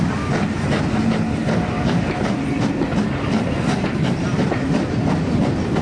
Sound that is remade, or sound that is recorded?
recorded